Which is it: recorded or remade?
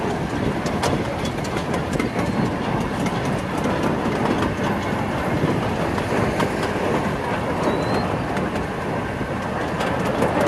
recorded